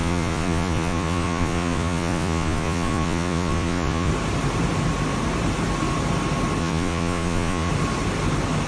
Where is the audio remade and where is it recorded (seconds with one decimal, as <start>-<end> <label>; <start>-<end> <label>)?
0.0-4.1 remade; 4.1-6.6 recorded; 6.6-7.7 remade; 7.7-8.7 recorded